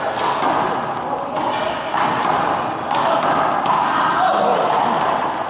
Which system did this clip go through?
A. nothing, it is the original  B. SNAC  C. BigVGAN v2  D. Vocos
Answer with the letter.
A